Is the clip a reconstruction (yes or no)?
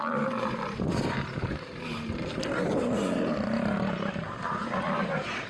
yes